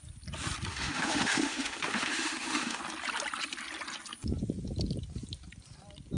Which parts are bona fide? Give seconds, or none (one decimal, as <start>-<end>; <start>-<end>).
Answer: 0.0-0.7; 2.8-6.2

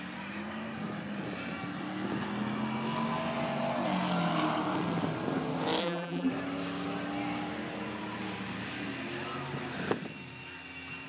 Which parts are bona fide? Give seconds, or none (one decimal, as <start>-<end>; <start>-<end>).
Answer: 0.0-5.8; 6.3-11.1